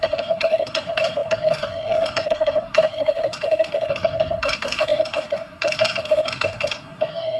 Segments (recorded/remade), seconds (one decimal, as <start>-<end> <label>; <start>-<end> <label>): 0.0-7.4 remade